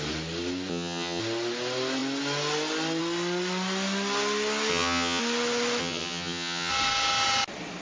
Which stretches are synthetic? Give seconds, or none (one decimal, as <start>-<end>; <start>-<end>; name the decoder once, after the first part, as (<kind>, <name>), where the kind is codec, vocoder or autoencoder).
0.7-1.2 (vocoder, HiFi-GAN); 4.7-5.2; 5.8-6.7